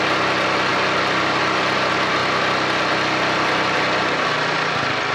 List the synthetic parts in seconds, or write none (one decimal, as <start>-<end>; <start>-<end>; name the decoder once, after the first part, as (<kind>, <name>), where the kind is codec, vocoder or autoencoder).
none